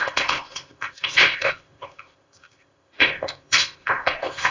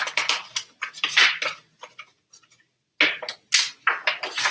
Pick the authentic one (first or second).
second